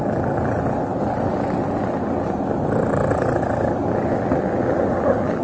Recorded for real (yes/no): yes